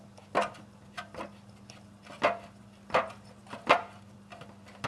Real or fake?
real